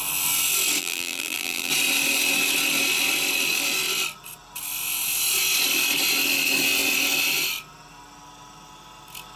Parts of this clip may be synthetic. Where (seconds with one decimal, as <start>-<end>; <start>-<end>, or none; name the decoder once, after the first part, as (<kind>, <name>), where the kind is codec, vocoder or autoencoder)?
0.8-1.7 (vocoder, BigVGAN v2)